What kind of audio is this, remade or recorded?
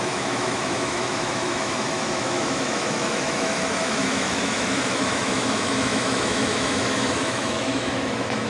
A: remade